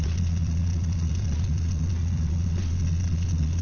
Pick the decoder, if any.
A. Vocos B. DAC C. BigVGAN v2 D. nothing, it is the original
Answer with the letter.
A